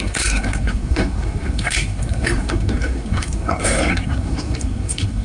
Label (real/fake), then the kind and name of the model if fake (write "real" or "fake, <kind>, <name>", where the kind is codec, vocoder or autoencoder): fake, codec, SNAC